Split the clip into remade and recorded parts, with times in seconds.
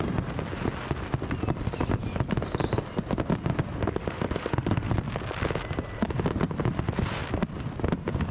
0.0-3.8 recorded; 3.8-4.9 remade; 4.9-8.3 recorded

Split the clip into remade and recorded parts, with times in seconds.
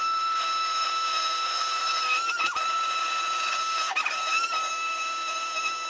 0.0-1.8 remade; 1.8-3.6 recorded; 3.6-4.0 remade; 4.0-4.7 recorded; 4.7-5.9 remade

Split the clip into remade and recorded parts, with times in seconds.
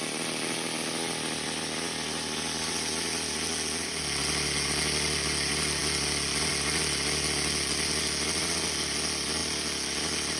0.0-10.4 recorded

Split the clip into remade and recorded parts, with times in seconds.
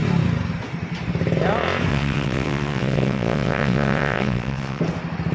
0.0-1.9 recorded; 1.9-4.8 remade; 4.8-5.3 recorded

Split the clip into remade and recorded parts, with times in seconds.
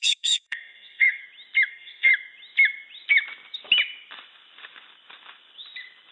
0.0-1.2 remade; 1.2-1.7 recorded; 1.7-2.1 remade; 2.1-6.1 recorded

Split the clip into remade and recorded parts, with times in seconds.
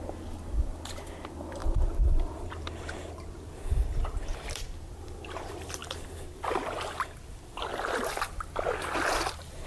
0.0-1.6 recorded; 1.6-3.5 remade; 3.5-9.7 recorded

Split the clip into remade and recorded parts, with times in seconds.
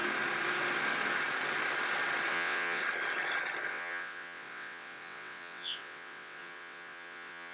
0.0-2.3 recorded; 2.3-2.8 remade; 2.8-3.7 recorded; 3.7-7.5 remade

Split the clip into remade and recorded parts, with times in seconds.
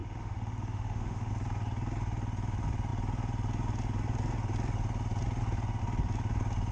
0.0-1.3 remade; 1.3-6.7 recorded